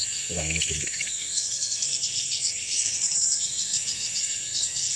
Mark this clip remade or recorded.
remade